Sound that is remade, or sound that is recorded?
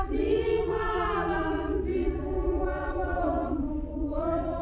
remade